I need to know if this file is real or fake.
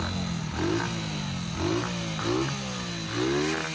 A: real